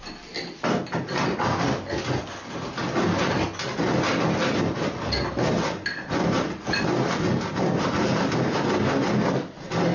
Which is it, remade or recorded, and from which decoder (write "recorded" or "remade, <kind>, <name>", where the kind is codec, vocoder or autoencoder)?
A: recorded